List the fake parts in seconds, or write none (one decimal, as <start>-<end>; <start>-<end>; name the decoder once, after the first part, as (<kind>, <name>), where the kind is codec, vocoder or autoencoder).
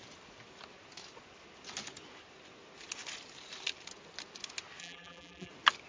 4.8-5.5 (vocoder, BigVGAN v2)